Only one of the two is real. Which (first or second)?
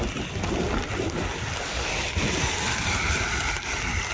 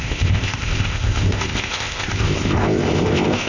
first